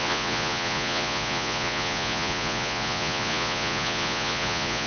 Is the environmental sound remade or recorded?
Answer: remade